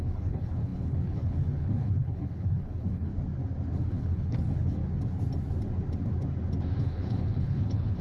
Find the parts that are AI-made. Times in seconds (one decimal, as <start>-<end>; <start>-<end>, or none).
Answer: 0.0-3.1; 3.8-4.8; 6.8-8.0